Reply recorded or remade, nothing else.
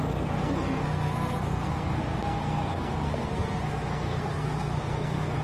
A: remade